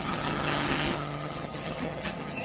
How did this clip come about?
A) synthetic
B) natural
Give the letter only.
A